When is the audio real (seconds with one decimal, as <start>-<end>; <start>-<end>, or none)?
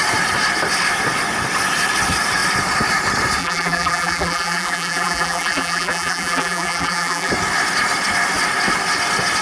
0.0-3.4; 7.3-9.4